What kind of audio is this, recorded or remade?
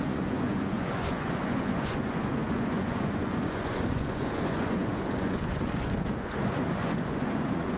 remade